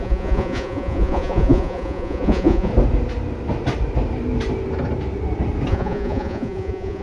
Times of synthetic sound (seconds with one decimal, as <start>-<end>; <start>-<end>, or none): 0.0-2.7; 5.7-7.0